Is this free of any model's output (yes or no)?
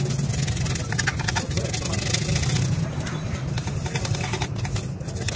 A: yes